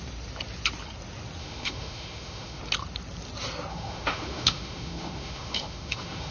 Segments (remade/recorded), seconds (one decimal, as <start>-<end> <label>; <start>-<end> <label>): 0.0-1.4 recorded; 1.4-2.6 remade; 2.6-3.7 recorded; 3.7-6.3 remade